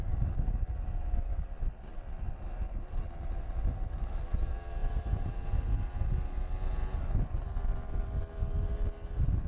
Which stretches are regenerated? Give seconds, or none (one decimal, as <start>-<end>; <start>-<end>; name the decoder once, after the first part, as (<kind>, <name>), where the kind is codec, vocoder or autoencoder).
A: 4.8-5.3 (vocoder, BigVGAN v2)